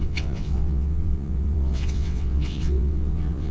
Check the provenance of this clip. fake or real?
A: fake